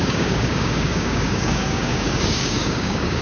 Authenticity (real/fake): fake